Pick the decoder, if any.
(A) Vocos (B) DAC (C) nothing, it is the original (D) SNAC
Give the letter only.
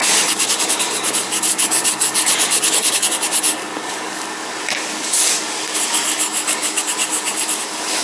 B